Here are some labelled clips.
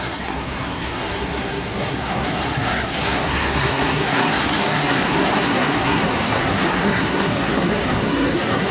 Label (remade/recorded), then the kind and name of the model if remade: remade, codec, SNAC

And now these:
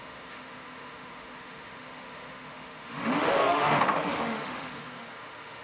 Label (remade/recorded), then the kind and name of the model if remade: remade, autoencoder, DAC-VAE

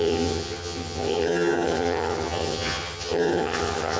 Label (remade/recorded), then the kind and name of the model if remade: remade, vocoder, HiFi-GAN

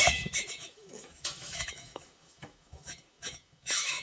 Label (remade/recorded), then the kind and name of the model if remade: remade, autoencoder, DAC-VAE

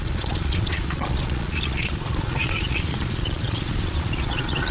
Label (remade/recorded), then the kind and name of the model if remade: remade, vocoder, Vocos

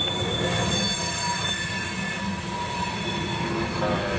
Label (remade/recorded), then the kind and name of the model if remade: recorded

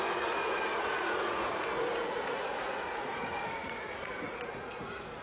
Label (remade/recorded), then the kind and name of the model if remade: remade, vocoder, Vocos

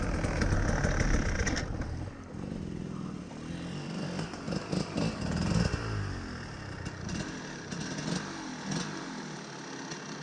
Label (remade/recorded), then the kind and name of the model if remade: recorded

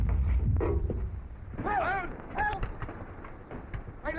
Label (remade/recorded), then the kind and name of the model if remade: remade, vocoder, BigVGAN v2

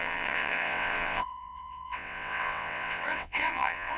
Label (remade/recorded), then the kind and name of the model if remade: remade, vocoder, WaveNeXt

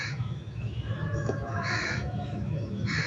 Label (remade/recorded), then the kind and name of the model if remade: remade, autoencoder, DAC-VAE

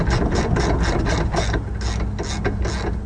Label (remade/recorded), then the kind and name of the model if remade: recorded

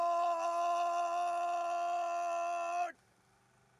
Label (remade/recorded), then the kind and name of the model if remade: recorded